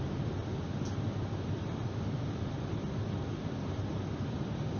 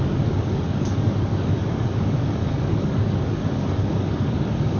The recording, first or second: first